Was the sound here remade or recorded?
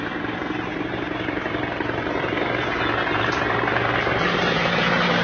remade